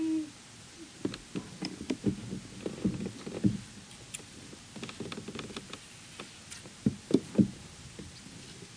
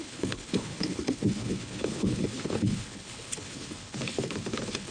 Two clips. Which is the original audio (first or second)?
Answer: first